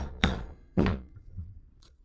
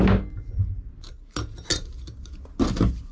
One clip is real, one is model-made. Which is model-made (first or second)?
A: first